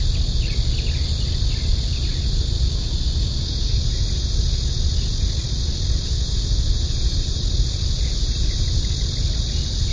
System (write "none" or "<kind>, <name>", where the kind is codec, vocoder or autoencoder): none